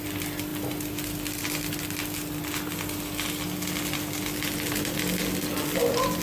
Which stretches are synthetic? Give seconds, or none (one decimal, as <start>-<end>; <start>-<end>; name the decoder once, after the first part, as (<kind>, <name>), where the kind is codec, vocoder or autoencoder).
none

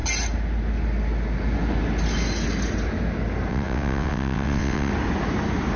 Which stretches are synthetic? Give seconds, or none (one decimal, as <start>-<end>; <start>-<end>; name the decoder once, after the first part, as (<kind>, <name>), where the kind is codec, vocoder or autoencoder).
3.5-4.9 (vocoder, WaveNeXt)

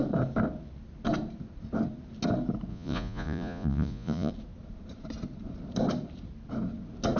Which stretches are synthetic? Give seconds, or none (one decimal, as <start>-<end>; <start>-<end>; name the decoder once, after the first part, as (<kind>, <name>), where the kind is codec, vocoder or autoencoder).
2.7-4.3 (vocoder, Vocos)